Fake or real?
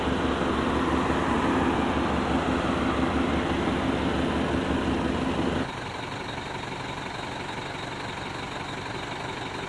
real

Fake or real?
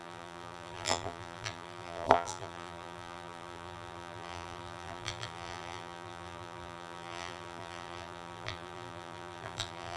fake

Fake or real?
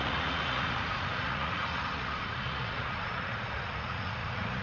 fake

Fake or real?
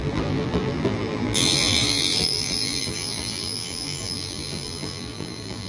fake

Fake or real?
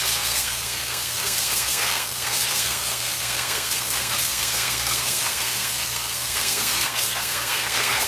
fake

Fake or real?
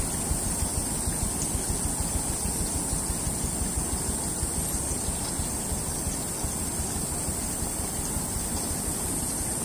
real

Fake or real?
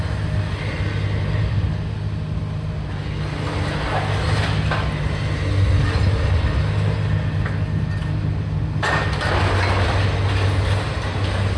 real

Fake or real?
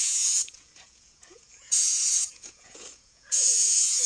fake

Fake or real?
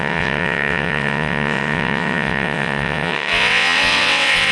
fake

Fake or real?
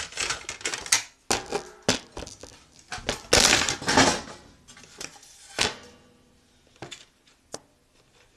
real